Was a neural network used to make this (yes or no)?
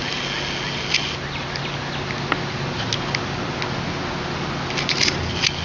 no